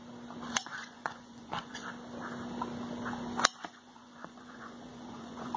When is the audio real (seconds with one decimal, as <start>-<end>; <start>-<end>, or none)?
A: 0.0-0.5; 1.8-3.7